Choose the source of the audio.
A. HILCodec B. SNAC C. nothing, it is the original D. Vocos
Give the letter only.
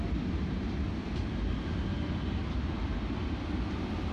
C